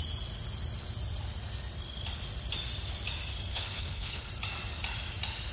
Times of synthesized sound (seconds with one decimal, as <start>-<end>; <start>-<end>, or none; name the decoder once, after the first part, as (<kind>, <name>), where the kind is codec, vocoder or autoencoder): 3.5-4.3 (codec, HILCodec)

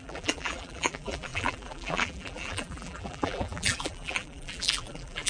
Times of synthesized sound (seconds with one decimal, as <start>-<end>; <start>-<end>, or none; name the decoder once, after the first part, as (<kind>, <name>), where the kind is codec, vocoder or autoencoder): 0.0-5.3 (vocoder, BigVGAN v2)

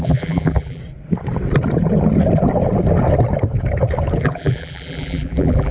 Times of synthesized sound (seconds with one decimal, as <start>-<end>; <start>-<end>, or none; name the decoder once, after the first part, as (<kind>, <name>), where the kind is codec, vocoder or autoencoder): 0.0-0.8 (vocoder, BigVGAN v2); 4.2-5.7